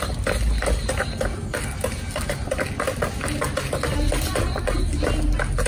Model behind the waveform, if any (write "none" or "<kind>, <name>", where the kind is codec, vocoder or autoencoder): none